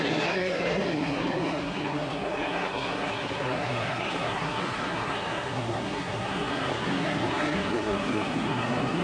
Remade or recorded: remade